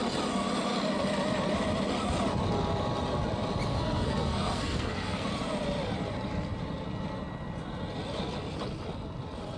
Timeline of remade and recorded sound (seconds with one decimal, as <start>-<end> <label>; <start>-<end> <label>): 0.0-3.7 recorded; 3.7-5.3 remade; 5.3-9.6 recorded